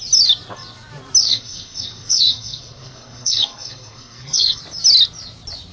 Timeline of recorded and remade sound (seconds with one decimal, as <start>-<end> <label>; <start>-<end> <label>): 0.0-1.2 recorded; 1.2-4.6 remade; 4.6-5.7 recorded